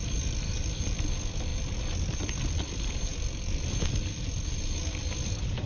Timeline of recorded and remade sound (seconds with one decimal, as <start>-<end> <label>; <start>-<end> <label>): 0.0-1.5 remade; 1.5-2.3 recorded; 2.3-3.1 remade; 3.1-5.7 recorded